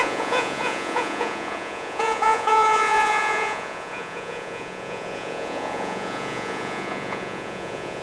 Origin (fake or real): fake